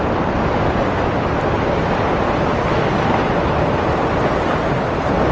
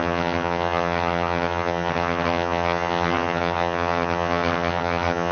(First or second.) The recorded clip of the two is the first